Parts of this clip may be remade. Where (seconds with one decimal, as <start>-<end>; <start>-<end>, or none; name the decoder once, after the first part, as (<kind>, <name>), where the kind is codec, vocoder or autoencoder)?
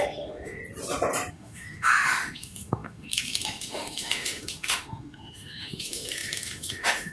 0.0-0.6 (autoencoder, DAC-VAE); 1.3-7.1